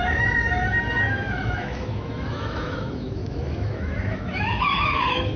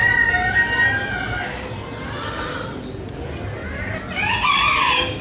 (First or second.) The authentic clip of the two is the second